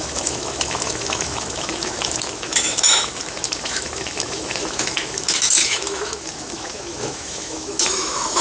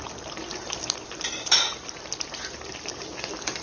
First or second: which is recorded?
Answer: second